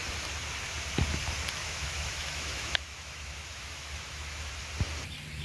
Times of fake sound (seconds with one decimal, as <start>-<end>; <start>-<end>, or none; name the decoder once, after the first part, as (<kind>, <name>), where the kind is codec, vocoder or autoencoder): 1.6-4.5 (autoencoder, DAC-VAE)